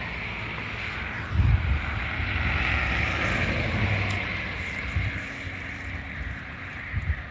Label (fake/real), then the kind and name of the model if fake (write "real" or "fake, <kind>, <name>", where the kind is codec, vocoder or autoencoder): real